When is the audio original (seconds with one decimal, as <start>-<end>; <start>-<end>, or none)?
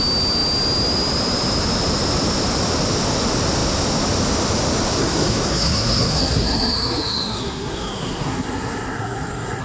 0.0-5.0